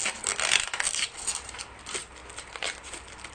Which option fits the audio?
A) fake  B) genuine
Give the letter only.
B